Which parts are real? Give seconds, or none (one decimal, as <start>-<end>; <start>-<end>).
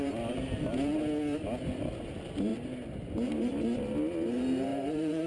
0.0-4.7